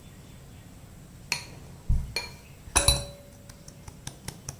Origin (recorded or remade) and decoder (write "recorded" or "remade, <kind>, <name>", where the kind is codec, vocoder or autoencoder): recorded